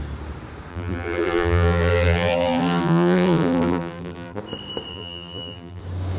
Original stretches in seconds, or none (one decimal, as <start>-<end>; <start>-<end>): 0.0-0.7; 4.4-4.9; 5.8-6.2